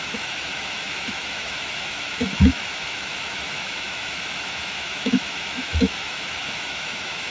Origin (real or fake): fake